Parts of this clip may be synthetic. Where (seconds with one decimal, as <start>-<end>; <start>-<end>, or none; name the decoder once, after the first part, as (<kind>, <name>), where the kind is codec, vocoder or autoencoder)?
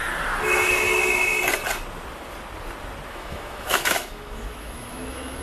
3.1-5.4 (autoencoder, DAC-VAE)